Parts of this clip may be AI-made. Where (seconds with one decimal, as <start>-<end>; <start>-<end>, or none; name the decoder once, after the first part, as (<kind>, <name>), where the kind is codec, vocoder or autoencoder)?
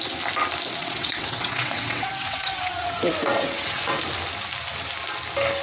0.8-4.0 (vocoder, WaveNeXt)